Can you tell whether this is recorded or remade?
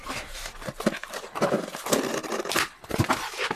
recorded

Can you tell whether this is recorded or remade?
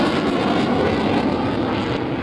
recorded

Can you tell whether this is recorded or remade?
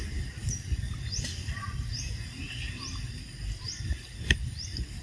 remade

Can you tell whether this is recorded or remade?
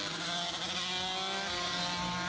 recorded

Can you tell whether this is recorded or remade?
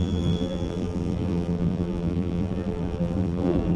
remade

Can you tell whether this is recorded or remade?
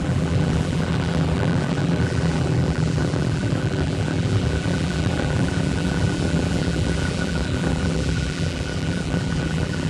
remade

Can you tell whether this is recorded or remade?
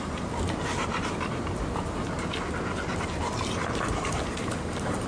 recorded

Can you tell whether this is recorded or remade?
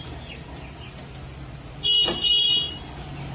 recorded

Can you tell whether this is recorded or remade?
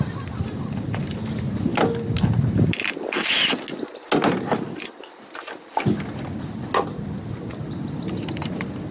recorded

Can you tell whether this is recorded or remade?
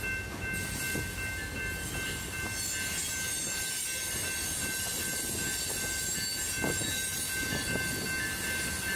recorded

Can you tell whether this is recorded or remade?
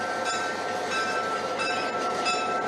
remade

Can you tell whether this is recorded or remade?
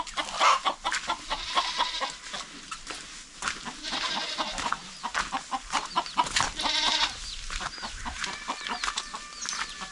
recorded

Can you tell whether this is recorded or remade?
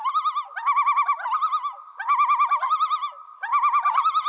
recorded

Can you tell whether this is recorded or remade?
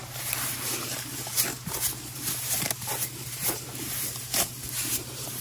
remade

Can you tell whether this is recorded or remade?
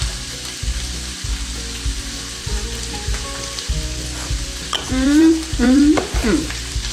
remade